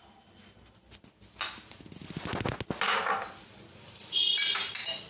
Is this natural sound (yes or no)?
yes